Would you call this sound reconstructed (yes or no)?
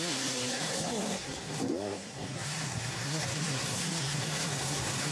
yes